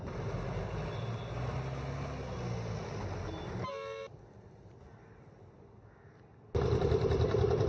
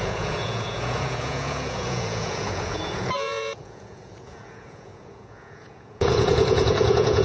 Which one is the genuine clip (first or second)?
first